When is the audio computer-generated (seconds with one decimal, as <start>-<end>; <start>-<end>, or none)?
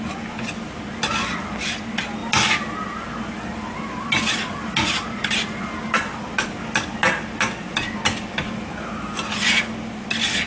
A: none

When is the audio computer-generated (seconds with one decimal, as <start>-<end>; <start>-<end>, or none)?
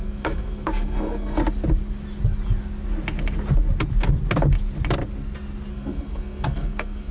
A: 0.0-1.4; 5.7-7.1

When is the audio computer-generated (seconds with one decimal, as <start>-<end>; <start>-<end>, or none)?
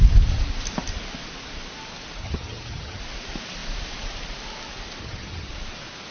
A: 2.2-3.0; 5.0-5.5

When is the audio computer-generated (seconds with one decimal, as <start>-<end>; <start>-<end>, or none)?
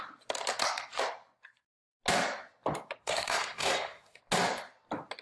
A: 3.0-4.2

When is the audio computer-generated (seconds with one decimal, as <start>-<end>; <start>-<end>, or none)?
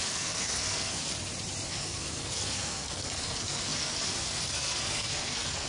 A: 0.0-1.1; 1.7-5.7